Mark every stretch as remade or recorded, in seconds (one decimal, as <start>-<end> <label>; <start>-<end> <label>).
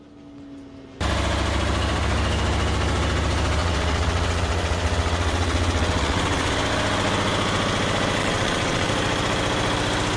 0.0-3.6 recorded; 3.6-6.5 remade; 6.5-8.2 recorded; 8.2-8.9 remade; 8.9-10.2 recorded